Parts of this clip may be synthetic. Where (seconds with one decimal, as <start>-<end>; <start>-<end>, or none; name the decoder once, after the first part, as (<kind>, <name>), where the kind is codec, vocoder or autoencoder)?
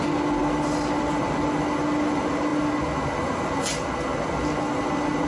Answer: none